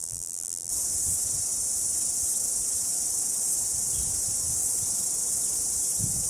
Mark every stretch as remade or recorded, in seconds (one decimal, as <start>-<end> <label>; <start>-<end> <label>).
0.0-0.7 remade; 0.7-6.3 recorded